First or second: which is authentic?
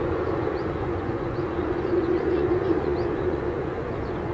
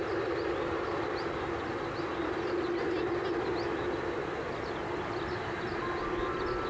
second